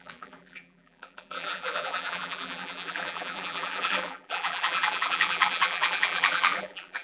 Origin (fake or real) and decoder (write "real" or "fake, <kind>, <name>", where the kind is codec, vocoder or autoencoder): fake, vocoder, BigVGAN v2